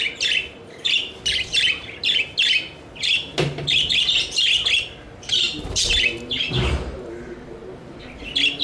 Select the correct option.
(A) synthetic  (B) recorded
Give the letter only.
B